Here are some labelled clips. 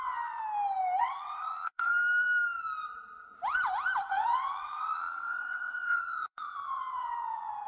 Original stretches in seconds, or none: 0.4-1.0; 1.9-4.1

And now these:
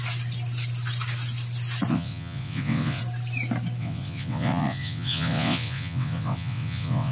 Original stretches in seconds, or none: 0.0-1.9; 3.0-3.8

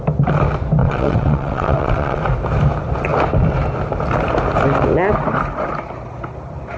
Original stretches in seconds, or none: 0.0-0.8; 2.2-6.8

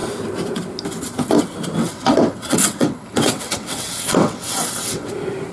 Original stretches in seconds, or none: 0.0-1.8; 5.1-5.5

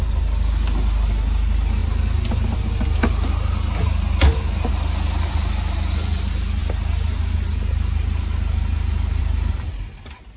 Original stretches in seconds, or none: 0.0-10.4

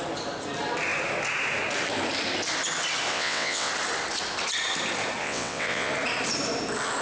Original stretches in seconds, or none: 0.0-3.1; 3.7-5.2; 5.9-7.0